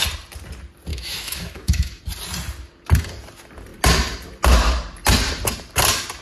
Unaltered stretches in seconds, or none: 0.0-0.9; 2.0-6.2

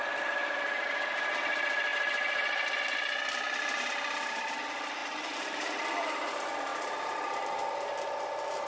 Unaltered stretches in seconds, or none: 0.0-1.9; 2.8-5.0; 6.3-8.7

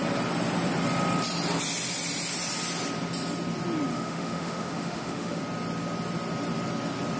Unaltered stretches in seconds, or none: 0.0-3.9; 5.4-7.2

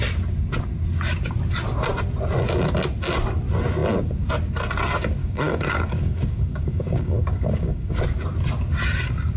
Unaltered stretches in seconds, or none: 0.0-5.2; 8.0-9.4

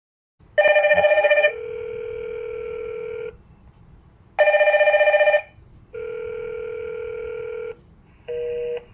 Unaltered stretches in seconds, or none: 0.0-0.8; 1.5-8.9

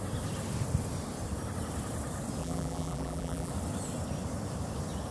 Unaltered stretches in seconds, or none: 0.0-2.4; 3.5-5.1

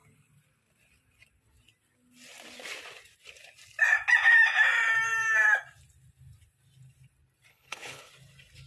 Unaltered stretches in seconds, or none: 0.0-7.5; 8.1-8.7